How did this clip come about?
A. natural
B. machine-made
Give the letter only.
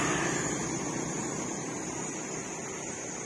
A